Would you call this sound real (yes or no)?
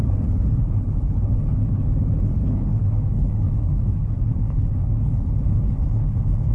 no